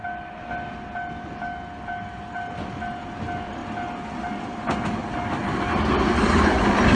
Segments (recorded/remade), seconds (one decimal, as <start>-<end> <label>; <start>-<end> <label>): 0.0-7.0 recorded